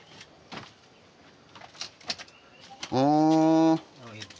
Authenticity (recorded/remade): recorded